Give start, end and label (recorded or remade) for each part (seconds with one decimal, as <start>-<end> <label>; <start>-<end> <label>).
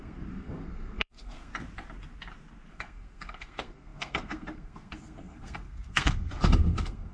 0.0-1.5 remade; 1.5-2.7 recorded; 2.7-7.1 remade